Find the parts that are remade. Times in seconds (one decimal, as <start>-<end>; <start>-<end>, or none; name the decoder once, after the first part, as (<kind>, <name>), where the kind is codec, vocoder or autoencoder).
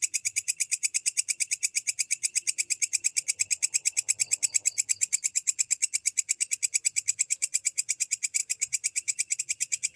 0.0-3.1 (vocoder, BigVGAN v2); 6.8-10.0